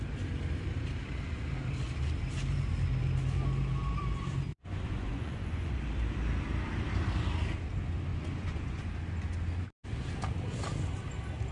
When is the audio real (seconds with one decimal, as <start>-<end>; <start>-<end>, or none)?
0.0-4.5; 5.7-8.1; 8.9-11.5